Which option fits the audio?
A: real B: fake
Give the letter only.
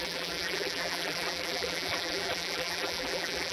B